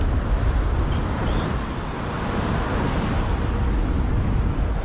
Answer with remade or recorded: recorded